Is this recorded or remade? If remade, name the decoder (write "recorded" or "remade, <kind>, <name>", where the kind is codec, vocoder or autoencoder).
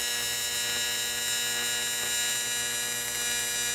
recorded